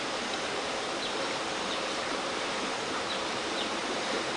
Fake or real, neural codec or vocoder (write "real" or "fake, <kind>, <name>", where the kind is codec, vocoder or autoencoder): fake, vocoder, BigVGAN v2